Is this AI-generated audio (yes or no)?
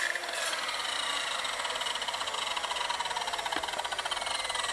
no